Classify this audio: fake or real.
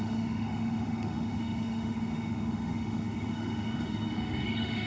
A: fake